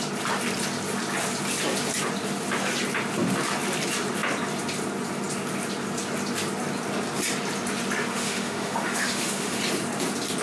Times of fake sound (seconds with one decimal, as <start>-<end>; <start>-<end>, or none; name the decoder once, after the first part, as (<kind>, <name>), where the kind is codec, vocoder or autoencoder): 8.1-9.6 (autoencoder, DAC-VAE)